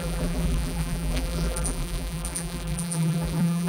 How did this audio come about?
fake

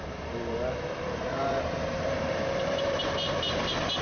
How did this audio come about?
fake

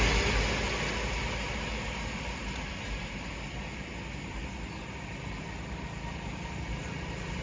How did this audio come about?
real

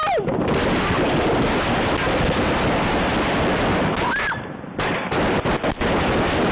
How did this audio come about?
real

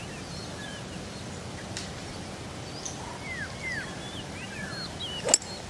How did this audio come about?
real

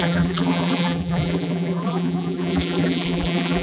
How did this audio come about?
fake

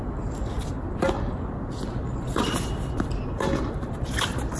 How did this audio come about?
real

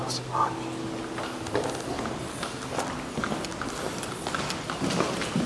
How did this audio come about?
real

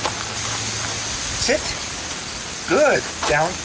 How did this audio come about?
real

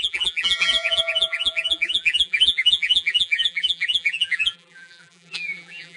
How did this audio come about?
fake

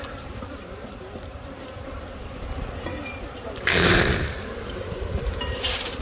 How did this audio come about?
fake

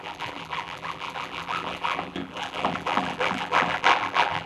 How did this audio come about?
fake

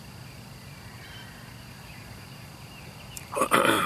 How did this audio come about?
fake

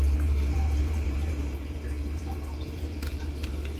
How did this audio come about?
fake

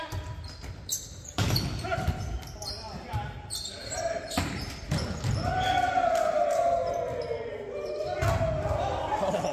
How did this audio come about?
real